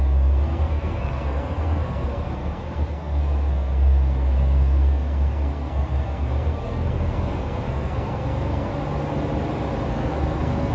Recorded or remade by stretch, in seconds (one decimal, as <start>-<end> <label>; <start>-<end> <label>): 0.0-8.7 remade; 8.7-9.9 recorded; 9.9-10.7 remade